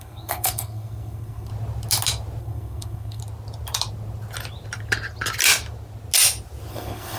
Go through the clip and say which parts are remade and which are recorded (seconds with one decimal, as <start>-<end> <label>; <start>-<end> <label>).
0.0-1.5 remade; 1.5-2.4 recorded; 2.4-3.2 remade; 3.2-6.7 recorded; 6.7-7.2 remade